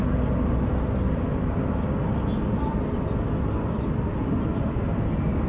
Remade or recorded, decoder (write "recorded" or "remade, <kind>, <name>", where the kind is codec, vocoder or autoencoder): recorded